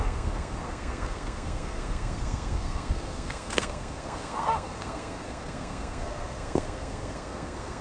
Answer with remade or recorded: remade